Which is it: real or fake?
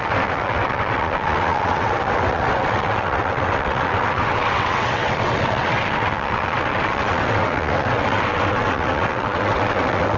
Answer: fake